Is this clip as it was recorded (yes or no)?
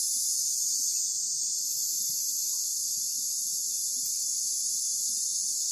yes